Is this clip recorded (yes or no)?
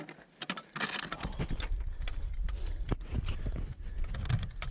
yes